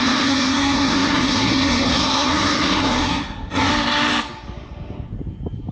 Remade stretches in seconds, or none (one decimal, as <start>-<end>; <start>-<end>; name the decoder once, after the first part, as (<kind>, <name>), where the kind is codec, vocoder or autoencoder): 0.0-3.7 (codec, SNAC)